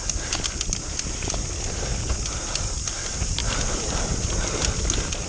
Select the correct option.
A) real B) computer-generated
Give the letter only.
A